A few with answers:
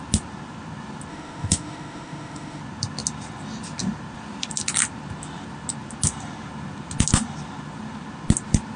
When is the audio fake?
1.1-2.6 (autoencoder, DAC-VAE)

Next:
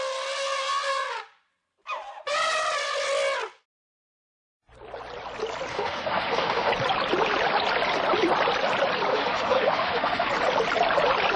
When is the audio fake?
5.7-6.7 (autoencoder, DAC-VAE); 9.1-10.3

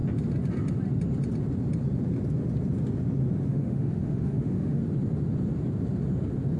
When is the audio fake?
3.5-4.8 (autoencoder, DAC-VAE)

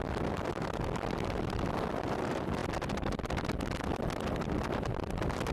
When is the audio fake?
none

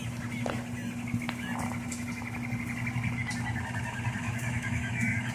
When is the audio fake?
4.2-5.3 (autoencoder, DAC-VAE)

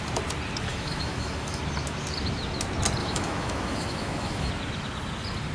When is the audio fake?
0.7-1.6 (autoencoder, DAC-VAE); 3.0-4.5

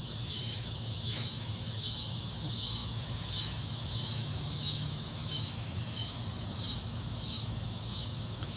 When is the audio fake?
0.0-8.6 (autoencoder, DAC-VAE)

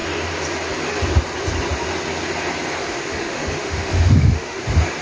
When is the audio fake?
2.9-4.6 (autoencoder, DAC-VAE)